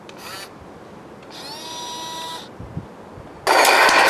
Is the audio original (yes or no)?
yes